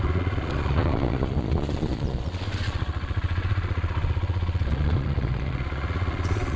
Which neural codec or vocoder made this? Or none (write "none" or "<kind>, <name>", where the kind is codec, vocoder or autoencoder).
vocoder, Vocos